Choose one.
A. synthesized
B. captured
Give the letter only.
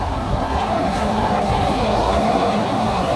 A